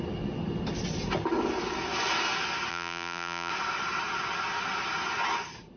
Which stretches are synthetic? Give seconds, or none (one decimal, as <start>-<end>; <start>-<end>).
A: 2.7-3.5